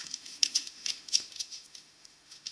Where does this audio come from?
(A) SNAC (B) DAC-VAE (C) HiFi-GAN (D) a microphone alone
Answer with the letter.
B